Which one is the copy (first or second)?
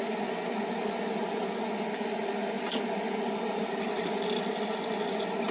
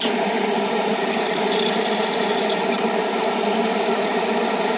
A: second